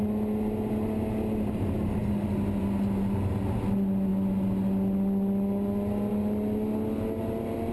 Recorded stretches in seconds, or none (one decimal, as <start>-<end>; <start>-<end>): 0.0-7.7